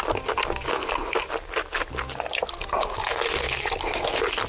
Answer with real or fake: real